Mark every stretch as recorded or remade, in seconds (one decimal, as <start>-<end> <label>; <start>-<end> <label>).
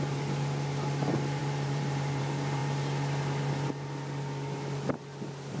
0.0-1.4 recorded; 1.4-2.2 remade; 2.2-5.6 recorded